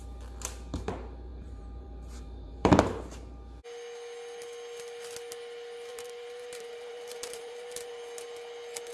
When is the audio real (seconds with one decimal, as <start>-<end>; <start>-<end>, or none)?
0.0-1.3; 2.7-5.9; 7.9-8.9